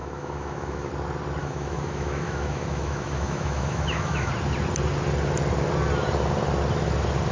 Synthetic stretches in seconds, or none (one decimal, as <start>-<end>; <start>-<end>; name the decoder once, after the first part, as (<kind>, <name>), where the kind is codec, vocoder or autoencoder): 0.0-0.9 (autoencoder, DAC-VAE); 1.4-4.3